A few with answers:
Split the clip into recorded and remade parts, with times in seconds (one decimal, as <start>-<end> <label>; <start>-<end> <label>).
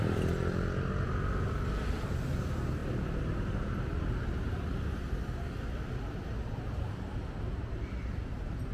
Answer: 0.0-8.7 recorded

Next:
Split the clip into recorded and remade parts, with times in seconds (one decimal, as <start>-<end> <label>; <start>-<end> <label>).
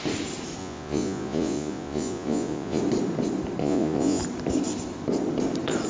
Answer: 0.0-0.6 recorded; 0.6-2.8 remade; 2.8-3.6 recorded; 3.6-4.2 remade; 4.2-5.9 recorded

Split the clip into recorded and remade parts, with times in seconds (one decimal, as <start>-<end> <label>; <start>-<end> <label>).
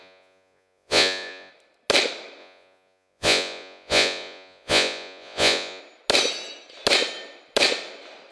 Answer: 0.0-1.5 remade; 1.5-2.4 recorded; 2.4-5.8 remade; 5.8-8.3 recorded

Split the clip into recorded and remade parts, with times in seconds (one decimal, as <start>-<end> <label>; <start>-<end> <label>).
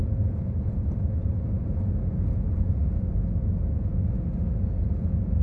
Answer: 0.0-3.2 remade; 3.2-3.9 recorded; 3.9-5.4 remade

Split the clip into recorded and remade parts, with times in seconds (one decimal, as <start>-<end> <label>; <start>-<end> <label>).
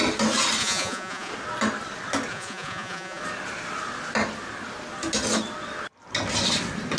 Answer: 0.0-0.6 recorded; 0.6-1.3 remade; 1.3-2.3 recorded; 2.3-3.2 remade; 3.2-7.0 recorded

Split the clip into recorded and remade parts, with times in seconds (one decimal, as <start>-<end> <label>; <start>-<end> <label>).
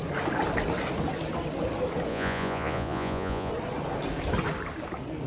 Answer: 0.0-2.1 recorded; 2.1-3.5 remade; 3.5-5.3 recorded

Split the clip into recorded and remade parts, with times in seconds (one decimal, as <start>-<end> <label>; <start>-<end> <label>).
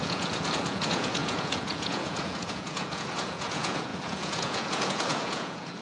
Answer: 0.0-5.8 remade